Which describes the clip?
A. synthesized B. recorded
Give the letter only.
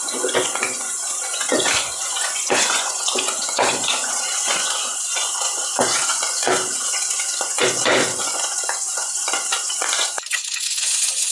A